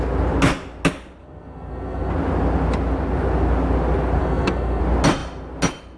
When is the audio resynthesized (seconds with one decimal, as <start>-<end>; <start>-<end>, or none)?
1.2-2.1; 4.2-4.8